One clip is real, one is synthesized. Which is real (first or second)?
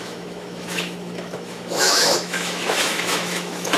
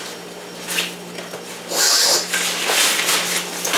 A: second